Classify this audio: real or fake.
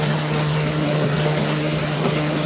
fake